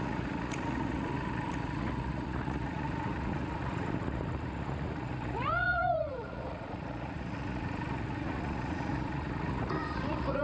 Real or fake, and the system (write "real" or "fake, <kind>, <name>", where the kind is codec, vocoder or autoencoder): fake, vocoder, Vocos